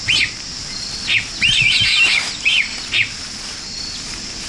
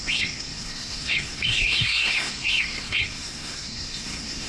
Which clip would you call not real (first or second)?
second